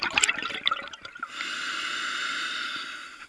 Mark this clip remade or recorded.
recorded